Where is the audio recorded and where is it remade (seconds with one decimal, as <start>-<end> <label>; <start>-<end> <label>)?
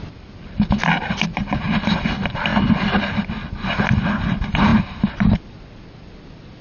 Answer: 0.0-2.5 recorded; 2.5-3.3 remade; 3.3-6.6 recorded